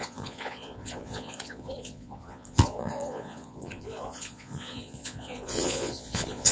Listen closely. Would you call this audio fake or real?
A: fake